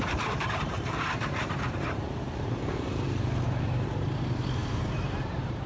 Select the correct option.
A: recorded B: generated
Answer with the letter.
B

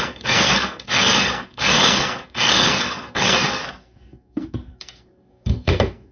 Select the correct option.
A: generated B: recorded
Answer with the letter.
A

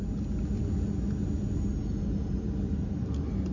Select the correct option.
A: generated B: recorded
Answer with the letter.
B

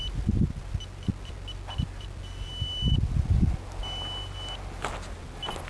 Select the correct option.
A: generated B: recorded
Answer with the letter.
B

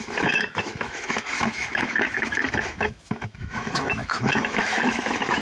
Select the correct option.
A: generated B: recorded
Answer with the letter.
A